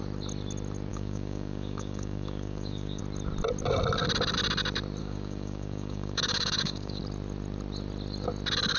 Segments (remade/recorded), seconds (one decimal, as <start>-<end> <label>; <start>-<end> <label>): 0.0-0.9 recorded; 0.9-3.0 remade; 3.0-5.0 recorded; 5.0-7.0 remade; 7.0-8.8 recorded